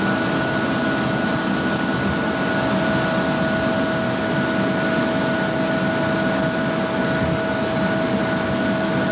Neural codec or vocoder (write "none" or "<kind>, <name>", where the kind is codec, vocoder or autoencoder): none